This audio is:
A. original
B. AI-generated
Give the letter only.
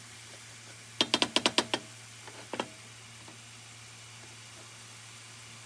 A